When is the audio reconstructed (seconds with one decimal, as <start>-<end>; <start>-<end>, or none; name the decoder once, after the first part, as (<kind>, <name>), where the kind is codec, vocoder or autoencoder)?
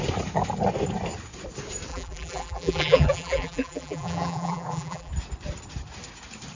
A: 1.9-5.1 (vocoder, BigVGAN v2)